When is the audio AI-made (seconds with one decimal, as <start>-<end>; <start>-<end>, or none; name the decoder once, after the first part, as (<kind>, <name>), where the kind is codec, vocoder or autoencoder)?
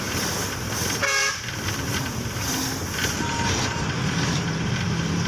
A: 1.2-2.5 (vocoder, BigVGAN v2)